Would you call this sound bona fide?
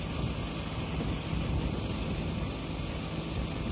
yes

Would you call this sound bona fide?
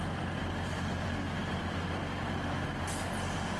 yes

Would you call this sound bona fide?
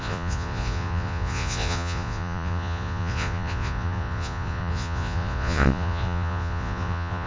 no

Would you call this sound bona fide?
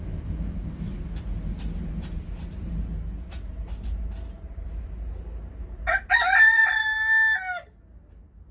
yes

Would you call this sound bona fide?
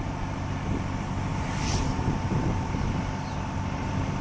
yes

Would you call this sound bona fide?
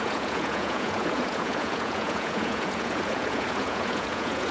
no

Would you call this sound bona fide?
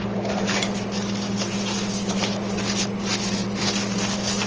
yes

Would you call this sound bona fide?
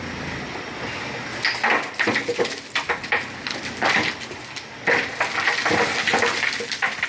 yes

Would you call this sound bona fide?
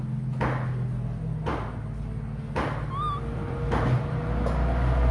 yes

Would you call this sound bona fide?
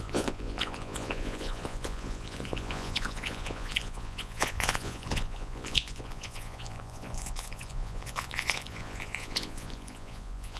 no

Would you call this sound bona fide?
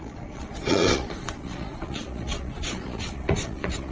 no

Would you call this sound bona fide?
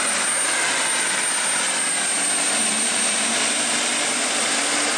yes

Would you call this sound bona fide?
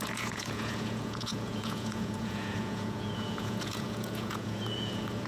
no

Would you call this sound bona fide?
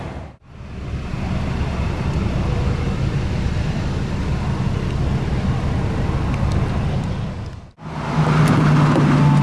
yes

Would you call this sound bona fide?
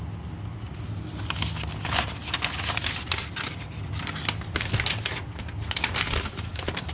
yes